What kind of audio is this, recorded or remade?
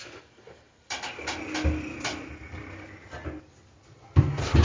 recorded